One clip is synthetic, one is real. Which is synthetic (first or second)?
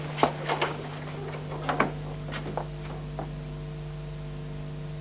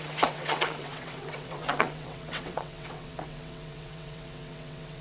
second